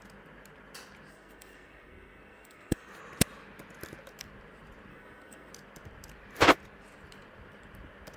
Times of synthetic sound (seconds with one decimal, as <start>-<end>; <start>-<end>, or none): 1.1-2.9; 4.9-5.5

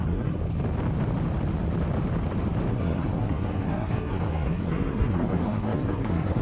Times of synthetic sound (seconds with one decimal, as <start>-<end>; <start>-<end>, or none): 0.0-0.4; 2.7-6.4

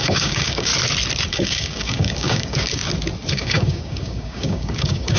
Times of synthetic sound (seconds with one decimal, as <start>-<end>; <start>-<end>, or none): 0.0-0.7; 1.3-2.8; 3.3-5.2

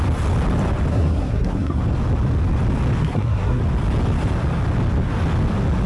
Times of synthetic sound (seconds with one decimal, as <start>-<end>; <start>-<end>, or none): 0.9-1.8; 3.0-3.6

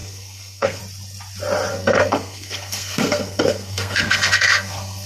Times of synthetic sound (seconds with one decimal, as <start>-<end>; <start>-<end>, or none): 0.0-0.8; 1.7-5.1

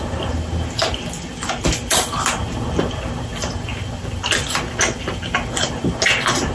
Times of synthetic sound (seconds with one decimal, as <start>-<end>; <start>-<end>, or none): none